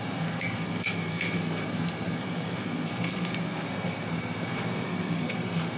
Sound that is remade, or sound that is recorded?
remade